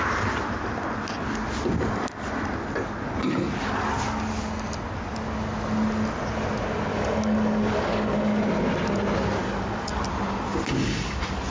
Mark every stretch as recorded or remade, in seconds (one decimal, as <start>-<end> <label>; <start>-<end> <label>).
0.0-6.9 recorded; 6.9-8.4 remade; 8.4-9.4 recorded; 9.4-10.0 remade; 10.0-11.5 recorded